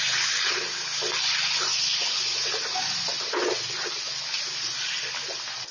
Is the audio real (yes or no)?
yes